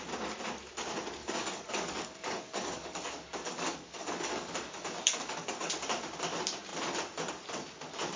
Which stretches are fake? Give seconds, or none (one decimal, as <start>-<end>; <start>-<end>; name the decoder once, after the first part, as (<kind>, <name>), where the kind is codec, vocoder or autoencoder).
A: 1.2-5.7 (codec, DAC)